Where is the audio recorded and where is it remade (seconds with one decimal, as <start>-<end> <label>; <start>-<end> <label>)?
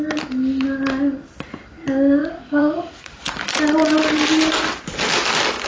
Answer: 0.0-2.2 recorded; 2.2-3.1 remade; 3.1-5.7 recorded